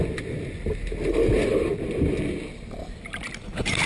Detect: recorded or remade recorded